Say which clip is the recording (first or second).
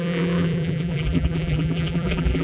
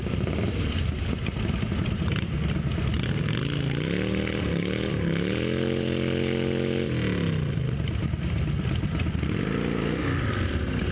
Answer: second